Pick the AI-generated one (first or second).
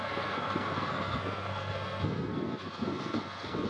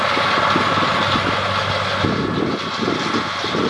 first